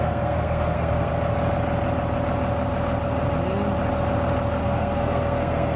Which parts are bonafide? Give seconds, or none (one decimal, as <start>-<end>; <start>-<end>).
1.1-4.6